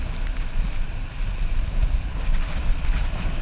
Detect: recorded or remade recorded